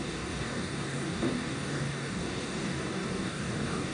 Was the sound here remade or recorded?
remade